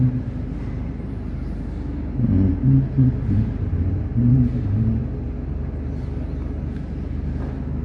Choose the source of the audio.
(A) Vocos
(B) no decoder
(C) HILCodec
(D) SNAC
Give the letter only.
B